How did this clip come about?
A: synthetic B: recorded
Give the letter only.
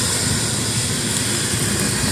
B